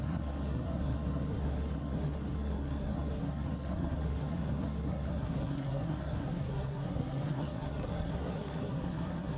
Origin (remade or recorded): remade